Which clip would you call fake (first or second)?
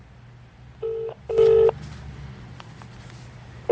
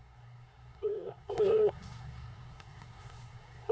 second